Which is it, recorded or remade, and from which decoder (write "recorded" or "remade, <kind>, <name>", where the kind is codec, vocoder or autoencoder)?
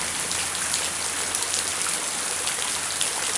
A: recorded